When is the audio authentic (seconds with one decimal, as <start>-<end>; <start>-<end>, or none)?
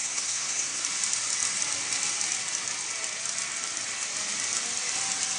0.8-5.4